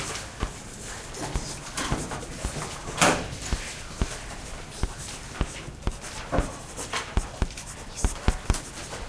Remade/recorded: recorded